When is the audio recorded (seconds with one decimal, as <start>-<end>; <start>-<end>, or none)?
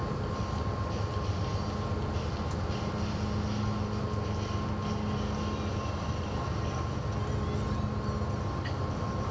0.0-9.3